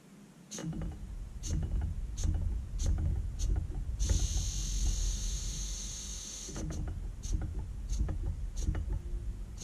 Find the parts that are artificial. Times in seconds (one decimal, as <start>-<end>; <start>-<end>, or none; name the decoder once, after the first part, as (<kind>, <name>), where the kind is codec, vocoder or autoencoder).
5.0-6.6 (autoencoder, DAC-VAE)